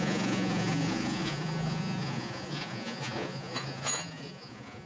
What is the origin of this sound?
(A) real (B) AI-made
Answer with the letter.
B